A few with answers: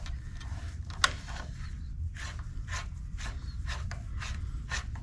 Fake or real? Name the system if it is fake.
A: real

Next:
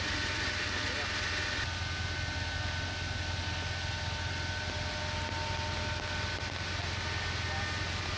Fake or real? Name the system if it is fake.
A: real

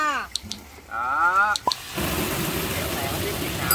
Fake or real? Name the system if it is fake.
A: real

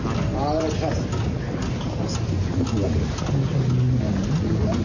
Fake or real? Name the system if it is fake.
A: real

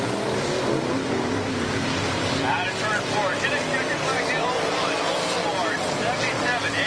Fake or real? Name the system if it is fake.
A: real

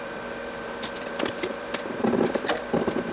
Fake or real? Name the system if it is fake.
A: fake, vocoder, BigVGAN v2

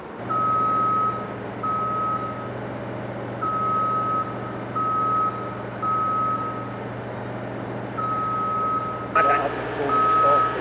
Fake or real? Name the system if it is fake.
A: real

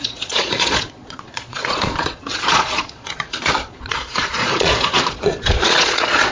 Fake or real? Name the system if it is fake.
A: fake, vocoder, Vocos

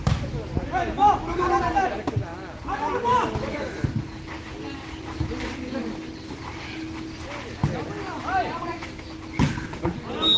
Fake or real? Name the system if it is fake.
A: real